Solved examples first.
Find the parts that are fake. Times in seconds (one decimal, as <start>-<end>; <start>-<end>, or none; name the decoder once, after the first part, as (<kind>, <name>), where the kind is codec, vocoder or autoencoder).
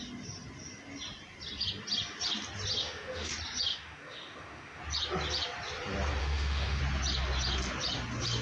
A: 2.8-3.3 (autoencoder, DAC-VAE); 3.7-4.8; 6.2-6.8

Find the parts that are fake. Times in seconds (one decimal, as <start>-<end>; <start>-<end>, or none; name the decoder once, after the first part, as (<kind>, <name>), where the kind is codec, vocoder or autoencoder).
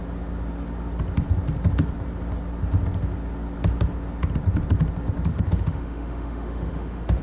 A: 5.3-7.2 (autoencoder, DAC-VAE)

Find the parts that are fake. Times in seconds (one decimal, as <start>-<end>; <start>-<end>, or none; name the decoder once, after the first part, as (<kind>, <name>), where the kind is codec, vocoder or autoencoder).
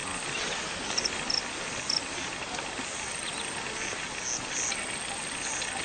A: none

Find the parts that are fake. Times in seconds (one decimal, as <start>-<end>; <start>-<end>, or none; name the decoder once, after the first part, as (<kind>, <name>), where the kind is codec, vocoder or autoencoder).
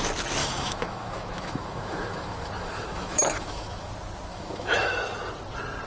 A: 0.4-3.9 (autoencoder, DAC-VAE); 4.3-4.9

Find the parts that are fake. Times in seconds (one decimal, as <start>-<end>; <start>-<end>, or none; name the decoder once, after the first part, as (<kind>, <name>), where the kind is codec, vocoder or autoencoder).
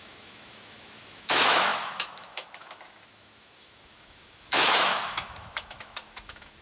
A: 0.0-6.6 (autoencoder, DAC-VAE)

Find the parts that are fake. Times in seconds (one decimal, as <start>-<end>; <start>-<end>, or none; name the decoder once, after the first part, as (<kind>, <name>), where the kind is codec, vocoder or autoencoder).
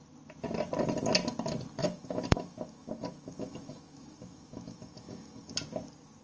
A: 1.8-5.5 (autoencoder, DAC-VAE)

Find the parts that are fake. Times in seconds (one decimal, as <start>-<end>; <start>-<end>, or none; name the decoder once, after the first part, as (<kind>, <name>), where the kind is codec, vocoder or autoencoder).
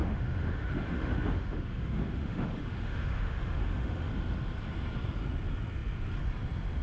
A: 0.0-4.1 (autoencoder, DAC-VAE)